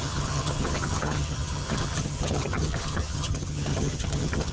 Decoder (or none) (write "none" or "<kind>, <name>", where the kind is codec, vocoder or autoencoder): vocoder, HiFi-GAN